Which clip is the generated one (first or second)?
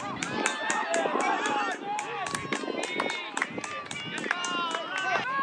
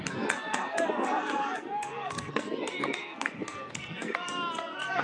second